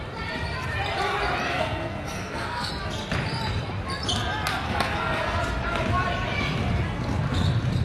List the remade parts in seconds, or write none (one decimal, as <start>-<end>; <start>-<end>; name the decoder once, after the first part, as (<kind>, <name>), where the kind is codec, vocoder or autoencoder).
1.5-2.7 (codec, SNAC); 4.5-5.4